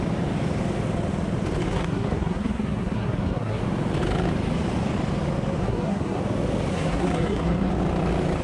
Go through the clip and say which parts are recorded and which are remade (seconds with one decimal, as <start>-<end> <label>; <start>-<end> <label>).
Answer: 0.0-1.6 recorded; 1.6-3.6 remade; 3.6-5.6 recorded; 5.6-6.2 remade; 6.2-6.7 recorded; 6.7-7.7 remade; 7.7-8.4 recorded